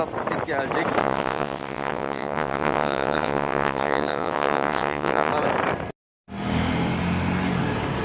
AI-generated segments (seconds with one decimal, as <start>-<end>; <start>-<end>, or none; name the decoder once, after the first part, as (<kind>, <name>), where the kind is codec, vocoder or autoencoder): 1.0-5.3 (vocoder, WaveNeXt)